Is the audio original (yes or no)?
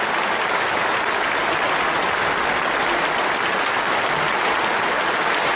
yes